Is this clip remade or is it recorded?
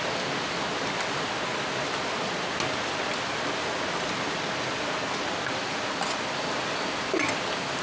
recorded